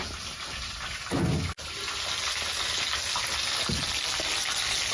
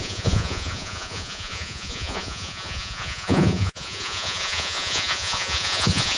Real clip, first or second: first